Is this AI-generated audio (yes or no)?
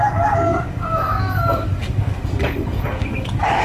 yes